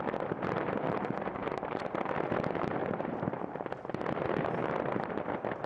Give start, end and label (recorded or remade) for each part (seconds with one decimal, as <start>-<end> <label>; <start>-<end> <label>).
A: 0.0-1.4 recorded; 1.4-2.0 remade; 2.0-2.8 recorded; 2.8-3.4 remade; 3.4-5.7 recorded